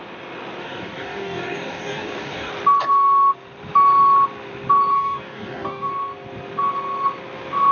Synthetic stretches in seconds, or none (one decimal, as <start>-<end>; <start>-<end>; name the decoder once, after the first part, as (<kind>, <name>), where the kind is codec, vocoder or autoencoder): 0.6-2.5 (codec, DAC); 4.9-5.9